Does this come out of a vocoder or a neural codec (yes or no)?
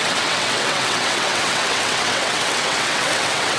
yes